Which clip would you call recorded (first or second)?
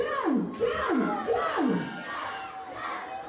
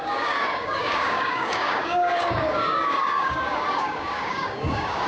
first